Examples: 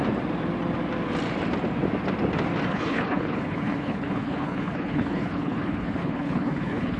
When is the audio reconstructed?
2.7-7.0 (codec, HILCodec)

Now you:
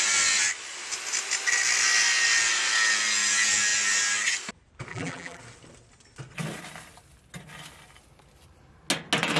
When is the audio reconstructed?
4.9-5.4 (vocoder, BigVGAN v2)

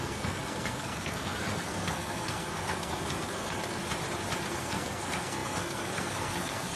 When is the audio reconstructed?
0.0-3.8 (codec, SNAC); 4.5-6.8

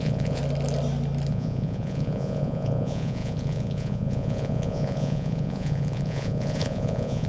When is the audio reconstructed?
0.0-0.4 (vocoder, Vocos); 1.3-7.3

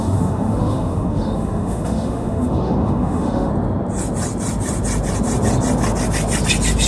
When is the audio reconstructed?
0.0-3.5 (autoencoder, DAC-VAE)

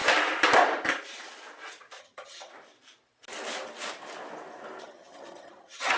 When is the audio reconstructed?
2.0-2.5 (vocoder, HiFi-GAN); 4.8-6.0

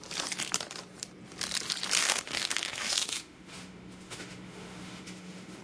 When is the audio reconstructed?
2.0-5.6 (autoencoder, DAC-VAE)